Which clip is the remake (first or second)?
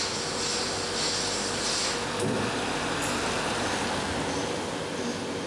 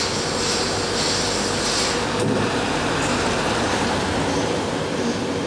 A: second